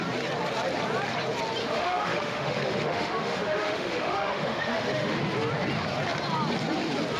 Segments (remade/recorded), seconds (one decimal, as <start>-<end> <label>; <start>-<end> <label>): 0.0-1.6 recorded; 1.6-5.2 remade; 5.2-7.2 recorded